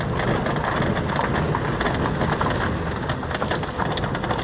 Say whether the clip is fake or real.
real